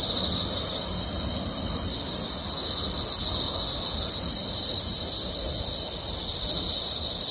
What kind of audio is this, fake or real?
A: real